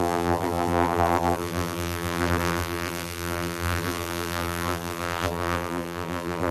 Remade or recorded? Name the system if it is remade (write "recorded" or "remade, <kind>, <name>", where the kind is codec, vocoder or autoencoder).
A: remade, vocoder, BigVGAN v2